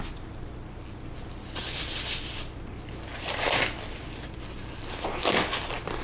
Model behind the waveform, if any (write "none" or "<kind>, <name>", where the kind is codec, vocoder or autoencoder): none